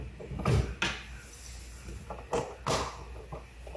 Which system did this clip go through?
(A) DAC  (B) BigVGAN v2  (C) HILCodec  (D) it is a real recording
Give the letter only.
D